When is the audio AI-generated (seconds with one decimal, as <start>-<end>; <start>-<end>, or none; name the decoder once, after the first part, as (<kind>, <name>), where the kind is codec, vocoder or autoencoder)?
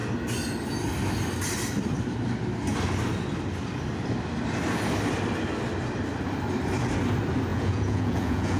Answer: 7.5-8.6 (vocoder, Vocos)